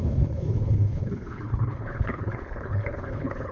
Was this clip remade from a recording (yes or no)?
yes